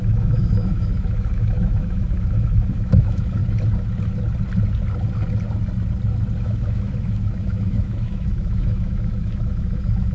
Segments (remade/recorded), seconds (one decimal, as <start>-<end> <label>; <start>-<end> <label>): 0.0-3.4 remade; 3.4-6.4 recorded; 6.4-10.1 remade